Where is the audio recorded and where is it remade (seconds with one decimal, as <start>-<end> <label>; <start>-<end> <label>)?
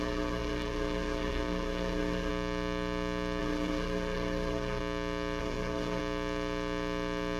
0.0-2.3 remade; 2.3-3.4 recorded; 3.4-4.8 remade; 4.8-5.4 recorded; 5.4-6.0 remade; 6.0-7.4 recorded